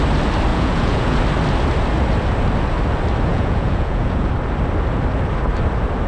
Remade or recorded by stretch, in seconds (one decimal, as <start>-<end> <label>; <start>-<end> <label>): 0.0-0.5 recorded; 0.5-1.2 remade; 1.2-3.3 recorded; 3.3-4.3 remade; 4.3-6.1 recorded